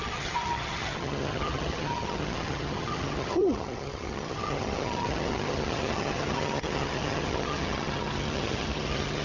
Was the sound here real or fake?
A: fake